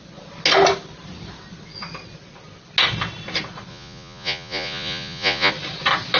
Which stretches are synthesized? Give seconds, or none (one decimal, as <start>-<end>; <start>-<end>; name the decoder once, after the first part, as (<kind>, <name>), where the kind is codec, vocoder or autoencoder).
3.7-5.5 (vocoder, Vocos)